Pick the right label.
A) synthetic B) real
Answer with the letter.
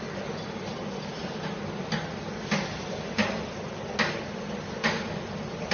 B